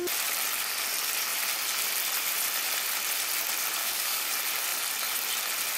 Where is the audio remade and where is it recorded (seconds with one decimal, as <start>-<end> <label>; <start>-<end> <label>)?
0.0-3.8 recorded; 3.8-4.3 remade; 4.3-5.8 recorded